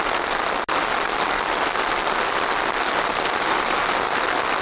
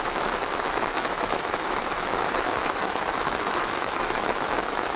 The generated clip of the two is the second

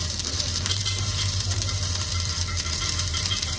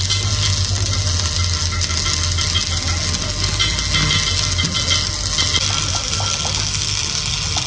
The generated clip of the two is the first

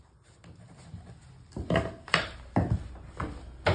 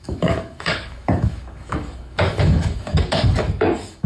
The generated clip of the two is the second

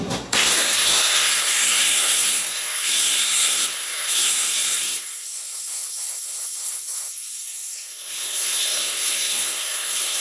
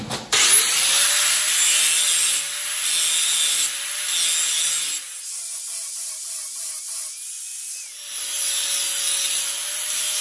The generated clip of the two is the first